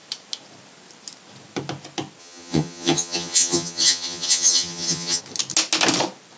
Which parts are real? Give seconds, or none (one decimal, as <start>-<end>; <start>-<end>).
0.0-2.2; 5.2-6.4